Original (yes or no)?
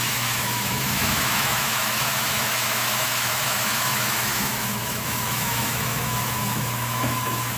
no